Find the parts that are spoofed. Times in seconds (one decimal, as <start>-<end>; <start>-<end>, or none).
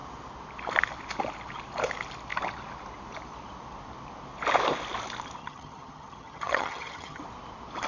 5.4-7.2